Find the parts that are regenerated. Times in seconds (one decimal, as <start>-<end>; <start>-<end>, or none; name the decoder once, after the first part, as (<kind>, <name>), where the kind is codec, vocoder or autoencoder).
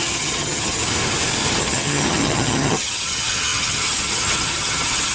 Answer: 0.0-0.8 (vocoder, HiFi-GAN); 1.6-5.1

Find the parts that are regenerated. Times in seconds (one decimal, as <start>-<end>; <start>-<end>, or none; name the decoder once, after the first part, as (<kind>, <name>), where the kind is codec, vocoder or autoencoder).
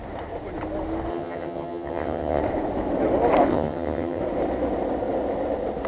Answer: 1.1-2.4 (vocoder, HiFi-GAN); 3.5-4.2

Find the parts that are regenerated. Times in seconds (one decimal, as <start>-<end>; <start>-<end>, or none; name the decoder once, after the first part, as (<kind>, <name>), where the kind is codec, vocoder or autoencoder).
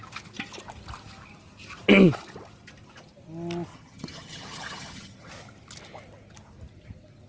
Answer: 3.7-5.3 (vocoder, HiFi-GAN)